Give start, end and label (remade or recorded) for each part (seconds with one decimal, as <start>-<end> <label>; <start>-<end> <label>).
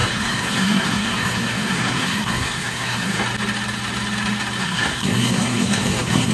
0.0-3.2 remade; 3.2-4.6 recorded; 4.6-6.3 remade